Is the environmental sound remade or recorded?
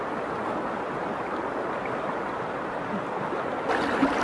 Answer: recorded